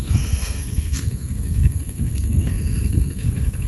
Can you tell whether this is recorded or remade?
remade